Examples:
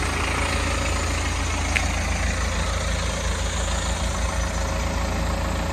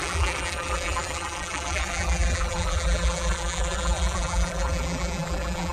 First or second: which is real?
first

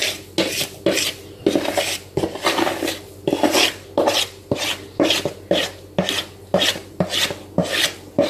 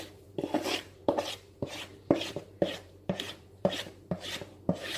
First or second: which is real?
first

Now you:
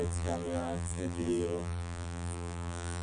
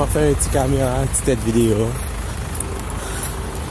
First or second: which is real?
second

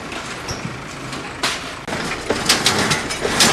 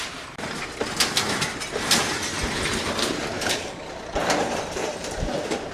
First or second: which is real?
first